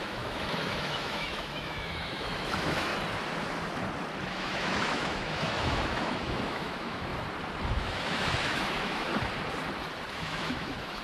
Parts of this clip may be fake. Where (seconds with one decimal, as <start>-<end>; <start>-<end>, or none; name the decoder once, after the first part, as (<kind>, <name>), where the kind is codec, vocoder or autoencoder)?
0.0-2.9 (autoencoder, DAC-VAE); 4.3-7.1; 7.7-9.1; 10.1-11.0